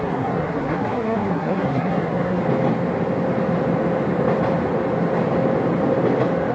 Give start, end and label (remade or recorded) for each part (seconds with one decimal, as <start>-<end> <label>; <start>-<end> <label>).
0.0-2.4 remade; 2.4-6.5 recorded